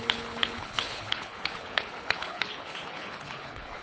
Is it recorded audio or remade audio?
remade